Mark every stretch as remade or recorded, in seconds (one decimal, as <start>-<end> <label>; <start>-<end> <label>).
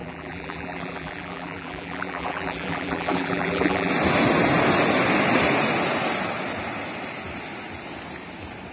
0.0-3.9 remade; 3.9-8.7 recorded